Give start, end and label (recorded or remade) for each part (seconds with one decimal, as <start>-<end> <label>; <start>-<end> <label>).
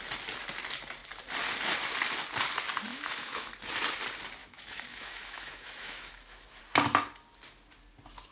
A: 0.0-2.9 recorded; 2.9-3.5 remade; 3.5-4.4 recorded; 4.4-6.6 remade; 6.6-8.3 recorded